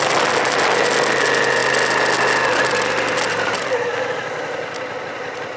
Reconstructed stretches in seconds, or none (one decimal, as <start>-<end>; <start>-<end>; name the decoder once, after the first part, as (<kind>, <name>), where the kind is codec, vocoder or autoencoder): none